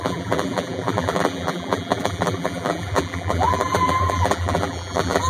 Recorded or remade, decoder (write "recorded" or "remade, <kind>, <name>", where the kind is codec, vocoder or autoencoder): remade, vocoder, BigVGAN v2